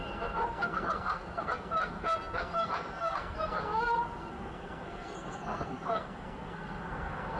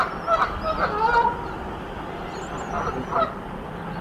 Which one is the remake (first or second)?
first